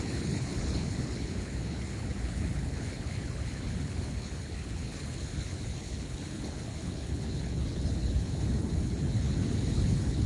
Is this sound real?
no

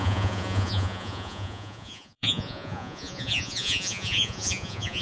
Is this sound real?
no